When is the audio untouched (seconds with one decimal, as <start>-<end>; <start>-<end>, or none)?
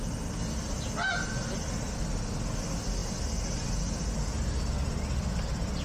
0.0-5.8